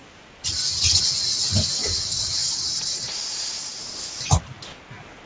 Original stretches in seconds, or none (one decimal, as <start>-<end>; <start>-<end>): 0.0-2.4; 3.8-5.3